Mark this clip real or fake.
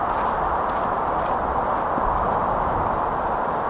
real